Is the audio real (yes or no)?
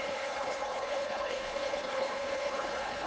no